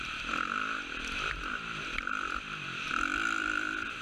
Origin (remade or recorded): remade